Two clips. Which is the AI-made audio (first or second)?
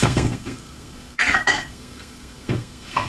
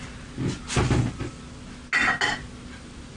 first